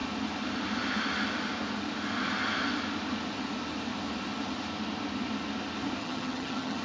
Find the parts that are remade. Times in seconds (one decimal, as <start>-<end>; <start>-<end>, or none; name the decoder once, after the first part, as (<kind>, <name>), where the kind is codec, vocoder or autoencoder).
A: 6.0-6.8 (vocoder, HiFi-GAN)